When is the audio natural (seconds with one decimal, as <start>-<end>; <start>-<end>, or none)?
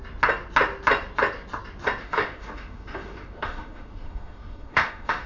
0.0-2.0